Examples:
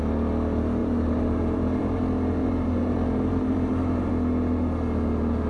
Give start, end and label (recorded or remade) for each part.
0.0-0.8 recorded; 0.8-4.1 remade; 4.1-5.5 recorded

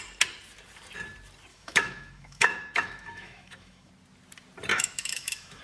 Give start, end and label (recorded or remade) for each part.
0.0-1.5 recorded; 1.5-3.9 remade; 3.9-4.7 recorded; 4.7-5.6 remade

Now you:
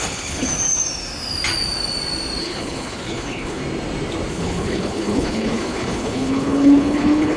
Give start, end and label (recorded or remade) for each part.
0.0-0.5 remade; 0.5-2.4 recorded; 2.4-3.6 remade; 3.6-4.3 recorded; 4.3-7.4 remade

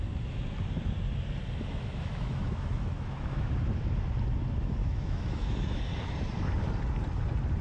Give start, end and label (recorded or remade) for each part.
0.0-1.7 recorded; 1.7-3.5 remade; 3.5-4.8 recorded; 4.8-5.8 remade; 5.8-7.6 recorded

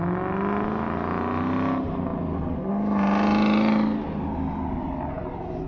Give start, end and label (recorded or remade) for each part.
0.0-5.7 recorded

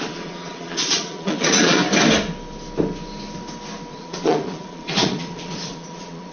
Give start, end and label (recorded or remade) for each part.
0.0-1.8 remade; 1.8-3.9 recorded; 3.9-6.3 remade

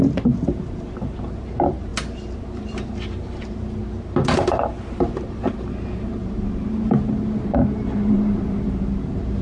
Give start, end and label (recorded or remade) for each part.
0.0-1.9 remade; 1.9-2.7 recorded; 2.7-3.8 remade; 3.8-4.5 recorded; 4.5-9.4 remade